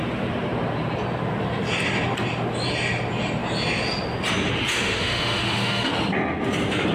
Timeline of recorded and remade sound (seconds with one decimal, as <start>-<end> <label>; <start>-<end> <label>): 0.0-4.7 recorded; 4.7-5.9 remade; 5.9-6.9 recorded